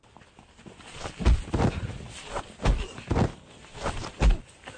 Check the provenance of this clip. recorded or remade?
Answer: recorded